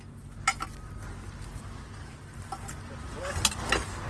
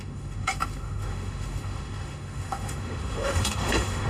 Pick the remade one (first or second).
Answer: second